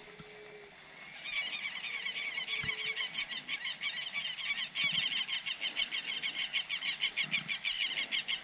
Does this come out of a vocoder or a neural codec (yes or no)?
no